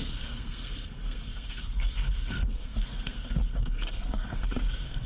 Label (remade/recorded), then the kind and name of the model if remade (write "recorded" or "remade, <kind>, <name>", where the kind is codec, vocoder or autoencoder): remade, codec, SNAC